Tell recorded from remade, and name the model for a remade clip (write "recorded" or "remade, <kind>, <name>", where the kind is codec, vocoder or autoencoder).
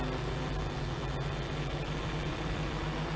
remade, vocoder, BigVGAN v2